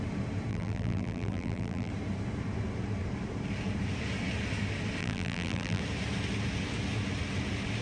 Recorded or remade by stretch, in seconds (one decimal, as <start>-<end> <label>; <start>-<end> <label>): 0.0-0.5 recorded; 0.5-1.9 remade; 1.9-5.0 recorded; 5.0-5.8 remade; 5.8-7.8 recorded